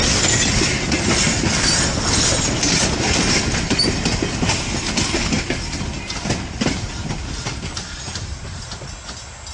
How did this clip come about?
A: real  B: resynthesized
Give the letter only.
A